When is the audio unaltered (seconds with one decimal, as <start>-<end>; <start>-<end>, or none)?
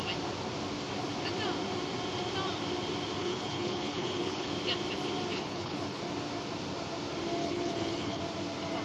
0.0-3.2; 4.5-5.3; 6.0-7.4; 8.2-8.8